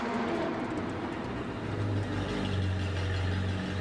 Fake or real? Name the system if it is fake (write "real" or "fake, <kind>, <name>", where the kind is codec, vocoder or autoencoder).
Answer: real